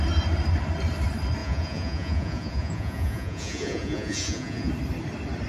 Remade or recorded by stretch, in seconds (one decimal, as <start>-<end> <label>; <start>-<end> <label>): 0.0-1.4 recorded; 1.4-4.7 remade; 4.7-5.5 recorded